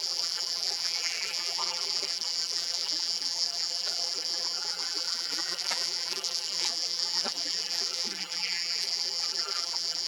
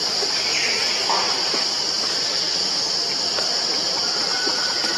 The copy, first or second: first